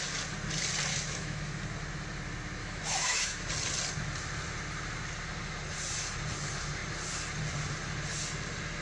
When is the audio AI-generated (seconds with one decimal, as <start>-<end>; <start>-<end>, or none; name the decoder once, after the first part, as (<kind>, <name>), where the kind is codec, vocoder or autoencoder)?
0.9-1.6 (autoencoder, DAC-VAE); 2.6-3.5